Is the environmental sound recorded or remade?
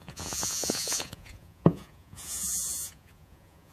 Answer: remade